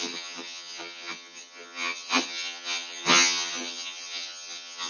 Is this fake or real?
fake